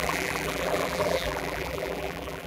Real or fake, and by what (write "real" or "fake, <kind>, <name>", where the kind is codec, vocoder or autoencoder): fake, vocoder, BigVGAN v2